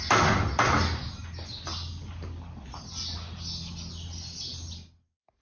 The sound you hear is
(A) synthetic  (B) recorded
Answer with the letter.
B